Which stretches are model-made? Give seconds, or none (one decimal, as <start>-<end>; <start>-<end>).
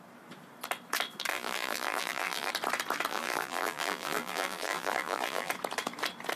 1.3-2.5; 3.1-5.5